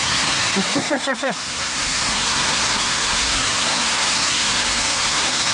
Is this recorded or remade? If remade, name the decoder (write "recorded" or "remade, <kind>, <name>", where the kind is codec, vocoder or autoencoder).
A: remade, codec, SNAC